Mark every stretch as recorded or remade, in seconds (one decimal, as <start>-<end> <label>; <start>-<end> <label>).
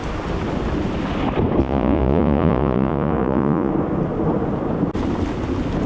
0.0-1.6 recorded; 1.6-3.7 remade; 3.7-5.9 recorded